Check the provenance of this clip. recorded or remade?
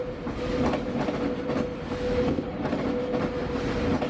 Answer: recorded